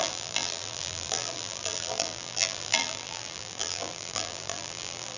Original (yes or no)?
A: no